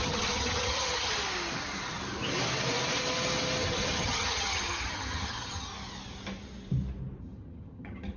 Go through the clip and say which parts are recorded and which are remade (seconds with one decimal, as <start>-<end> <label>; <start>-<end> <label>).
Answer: 0.0-1.1 remade; 1.1-3.6 recorded; 3.6-5.7 remade; 5.7-7.2 recorded; 7.2-8.2 remade